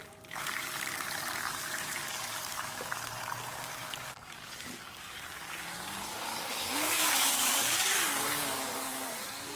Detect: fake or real fake